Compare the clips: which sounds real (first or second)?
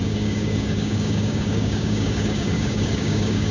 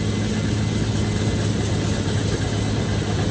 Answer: second